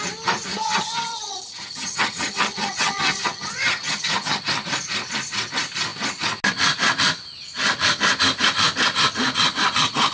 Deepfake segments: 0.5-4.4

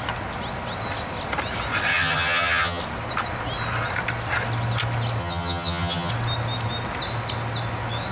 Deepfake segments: 1.9-2.8; 5.2-6.1

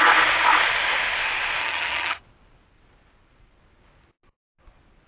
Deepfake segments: 1.6-2.2

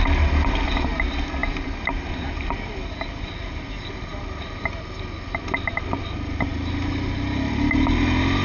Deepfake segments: none

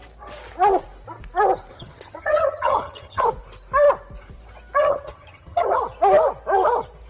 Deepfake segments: 1.7-3.2; 4.8-5.8

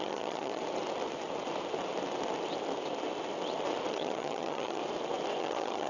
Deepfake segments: 0.0-0.6; 3.9-4.8; 5.4-5.9